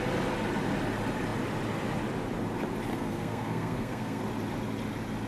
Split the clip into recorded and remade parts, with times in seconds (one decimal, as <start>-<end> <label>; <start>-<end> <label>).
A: 0.0-2.9 recorded; 2.9-4.2 remade; 4.2-5.3 recorded